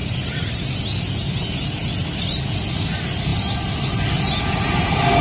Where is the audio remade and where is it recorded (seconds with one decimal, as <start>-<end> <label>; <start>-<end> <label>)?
0.0-0.6 remade; 0.6-5.2 recorded